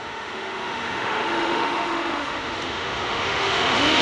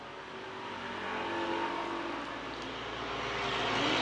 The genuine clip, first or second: second